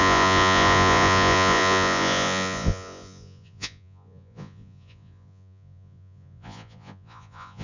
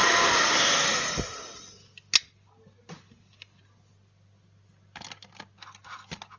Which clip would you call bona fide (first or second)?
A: second